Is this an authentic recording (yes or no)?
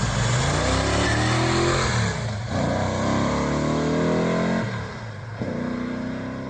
yes